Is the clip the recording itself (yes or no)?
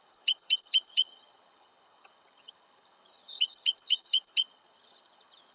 no